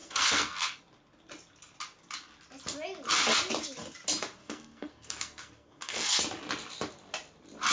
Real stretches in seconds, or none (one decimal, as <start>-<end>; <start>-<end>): 0.8-4.4; 6.2-7.7